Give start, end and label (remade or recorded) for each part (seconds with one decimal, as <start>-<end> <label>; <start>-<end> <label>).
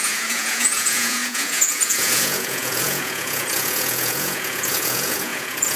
0.0-5.8 remade